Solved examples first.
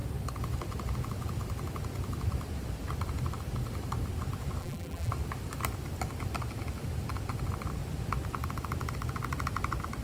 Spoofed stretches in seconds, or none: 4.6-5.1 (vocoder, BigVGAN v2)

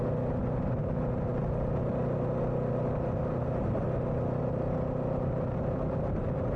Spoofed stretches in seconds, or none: none